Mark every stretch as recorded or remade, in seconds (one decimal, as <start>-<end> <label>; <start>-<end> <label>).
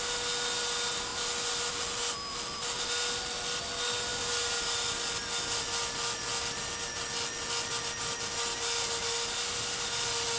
0.0-10.4 recorded